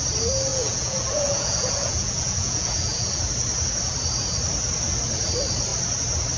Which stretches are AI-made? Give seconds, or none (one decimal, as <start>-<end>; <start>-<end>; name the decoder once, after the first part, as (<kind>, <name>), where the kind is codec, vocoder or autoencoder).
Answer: 0.5-3.2 (vocoder, Vocos)